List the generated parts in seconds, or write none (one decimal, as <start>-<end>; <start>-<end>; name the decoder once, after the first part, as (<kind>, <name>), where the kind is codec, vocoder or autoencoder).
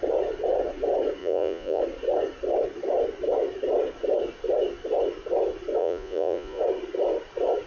1.2-1.8 (vocoder, Vocos); 5.8-6.6